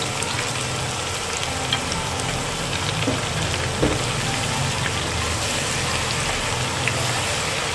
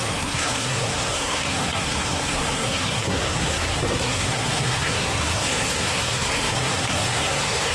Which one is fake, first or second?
second